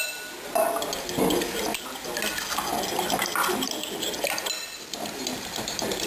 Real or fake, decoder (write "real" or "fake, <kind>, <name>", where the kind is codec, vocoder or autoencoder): real